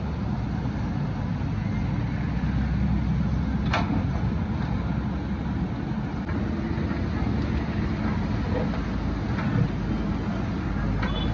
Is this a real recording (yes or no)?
yes